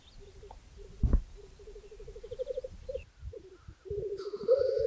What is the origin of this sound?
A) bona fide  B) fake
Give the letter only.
A